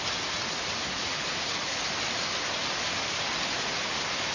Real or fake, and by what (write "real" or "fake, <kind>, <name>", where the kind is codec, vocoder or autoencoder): real